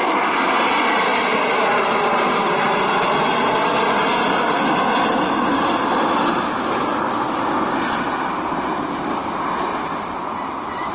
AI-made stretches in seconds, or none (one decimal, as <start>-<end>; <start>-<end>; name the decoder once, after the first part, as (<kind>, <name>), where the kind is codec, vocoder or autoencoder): none